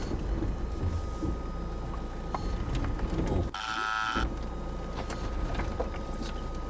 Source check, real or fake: real